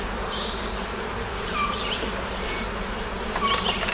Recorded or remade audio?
remade